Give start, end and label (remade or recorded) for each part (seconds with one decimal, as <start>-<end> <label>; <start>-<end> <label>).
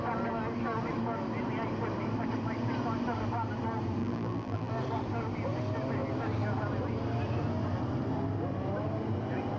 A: 0.0-4.0 recorded; 4.0-4.7 remade; 4.7-9.6 recorded